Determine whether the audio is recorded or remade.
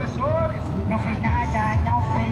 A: remade